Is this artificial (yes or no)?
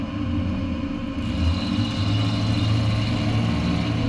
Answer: no